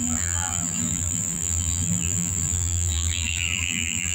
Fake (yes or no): yes